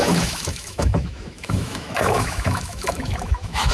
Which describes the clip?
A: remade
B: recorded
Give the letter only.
A